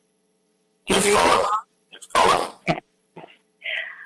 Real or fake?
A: fake